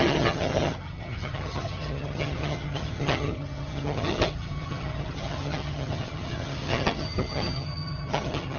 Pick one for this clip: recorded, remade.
remade